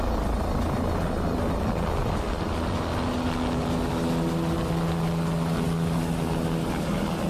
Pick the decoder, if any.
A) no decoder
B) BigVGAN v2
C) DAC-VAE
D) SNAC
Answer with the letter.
A